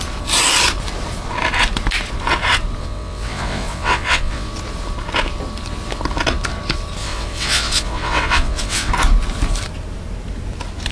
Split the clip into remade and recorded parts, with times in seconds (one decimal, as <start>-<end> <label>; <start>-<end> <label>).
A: 0.0-2.8 recorded; 2.8-4.5 remade; 4.5-7.0 recorded; 7.0-8.9 remade; 8.9-10.9 recorded